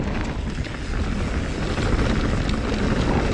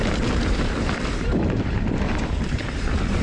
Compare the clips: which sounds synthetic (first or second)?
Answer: second